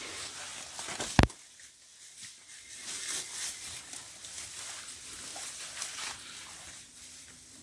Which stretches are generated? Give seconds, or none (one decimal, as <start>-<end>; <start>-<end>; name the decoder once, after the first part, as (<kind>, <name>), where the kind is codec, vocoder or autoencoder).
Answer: 5.3-7.6 (vocoder, BigVGAN v2)